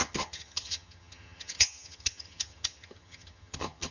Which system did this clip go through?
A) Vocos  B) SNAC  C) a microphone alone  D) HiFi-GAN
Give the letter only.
D